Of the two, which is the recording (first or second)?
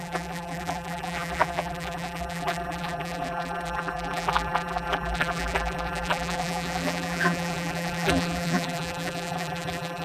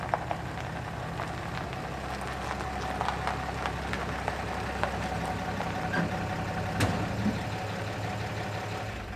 second